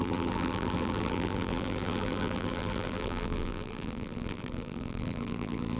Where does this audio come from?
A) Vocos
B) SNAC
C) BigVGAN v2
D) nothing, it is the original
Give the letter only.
C